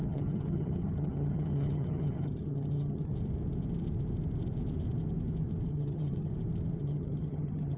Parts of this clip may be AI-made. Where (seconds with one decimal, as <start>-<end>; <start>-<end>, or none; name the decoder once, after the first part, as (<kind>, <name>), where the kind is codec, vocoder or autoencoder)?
0.0-3.1 (vocoder, HiFi-GAN); 5.7-6.3; 6.8-7.8